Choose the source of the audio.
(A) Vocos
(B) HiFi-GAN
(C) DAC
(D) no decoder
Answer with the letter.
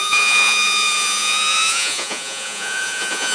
A